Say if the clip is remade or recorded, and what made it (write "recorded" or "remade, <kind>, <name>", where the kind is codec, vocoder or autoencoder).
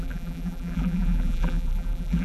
remade, vocoder, BigVGAN v2